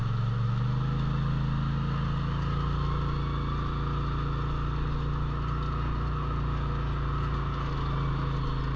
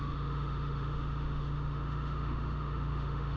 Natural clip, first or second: first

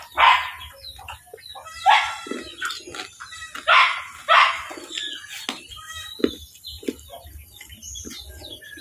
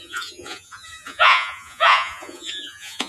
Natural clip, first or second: first